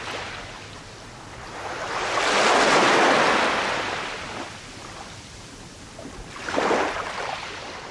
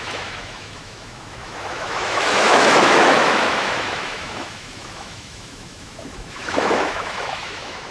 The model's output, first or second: second